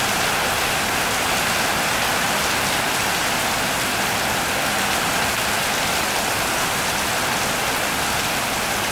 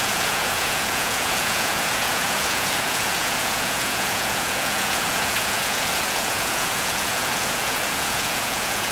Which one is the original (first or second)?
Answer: first